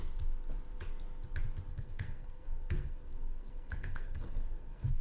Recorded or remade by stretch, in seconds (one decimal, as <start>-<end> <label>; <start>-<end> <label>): 0.0-1.7 recorded; 1.7-5.0 remade